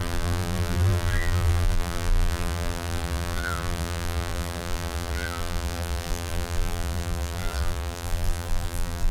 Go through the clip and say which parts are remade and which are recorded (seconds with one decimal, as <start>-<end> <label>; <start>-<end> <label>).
0.0-9.1 remade